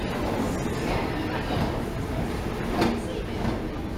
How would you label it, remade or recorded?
recorded